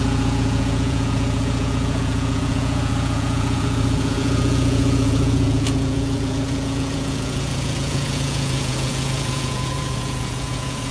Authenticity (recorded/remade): remade